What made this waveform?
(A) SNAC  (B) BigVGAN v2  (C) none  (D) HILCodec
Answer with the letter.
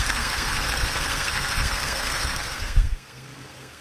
A